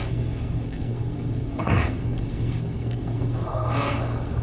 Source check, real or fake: fake